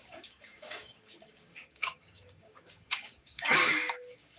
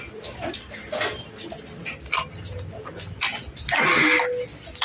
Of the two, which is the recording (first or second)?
second